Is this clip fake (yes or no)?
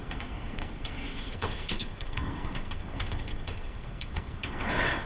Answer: yes